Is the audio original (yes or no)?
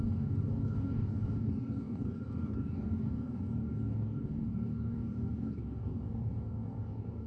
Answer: no